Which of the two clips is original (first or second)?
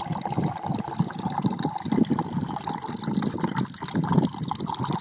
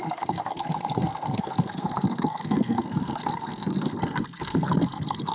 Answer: first